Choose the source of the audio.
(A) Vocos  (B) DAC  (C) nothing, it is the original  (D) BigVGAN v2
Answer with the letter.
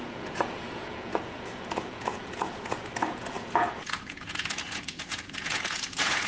A